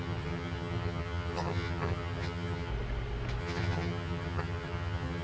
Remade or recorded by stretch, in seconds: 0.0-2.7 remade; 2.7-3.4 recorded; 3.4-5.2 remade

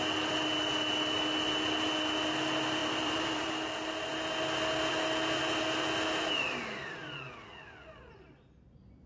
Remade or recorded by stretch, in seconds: 0.0-2.8 recorded; 2.8-3.5 remade; 3.5-9.1 recorded

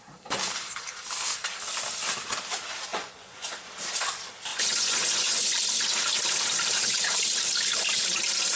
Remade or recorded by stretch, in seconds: 0.0-2.9 recorded; 2.9-3.5 remade; 3.5-4.5 recorded; 4.5-5.5 remade; 5.5-8.6 recorded

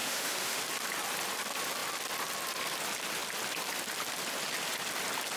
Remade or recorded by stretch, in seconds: 0.0-0.6 remade; 0.6-5.4 recorded

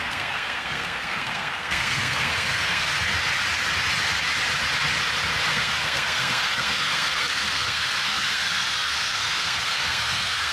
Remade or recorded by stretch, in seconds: 0.0-3.1 remade; 3.1-5.5 recorded; 5.5-10.5 remade